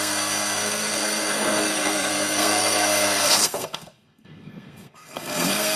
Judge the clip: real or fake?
fake